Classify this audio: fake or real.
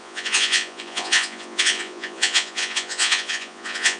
fake